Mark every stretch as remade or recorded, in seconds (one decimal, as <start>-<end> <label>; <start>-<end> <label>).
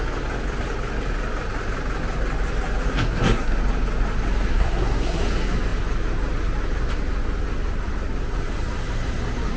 0.0-2.9 recorded; 2.9-3.6 remade; 3.6-4.5 recorded; 4.5-5.2 remade; 5.2-9.6 recorded